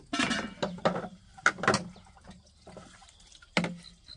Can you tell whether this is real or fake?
real